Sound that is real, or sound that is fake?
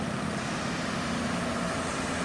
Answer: real